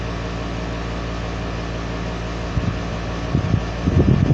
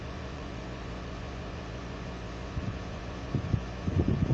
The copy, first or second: second